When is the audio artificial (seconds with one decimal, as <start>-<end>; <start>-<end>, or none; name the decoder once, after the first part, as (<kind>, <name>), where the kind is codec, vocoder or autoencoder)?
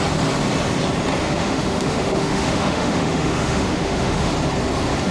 1.2-4.3 (autoencoder, DAC-VAE)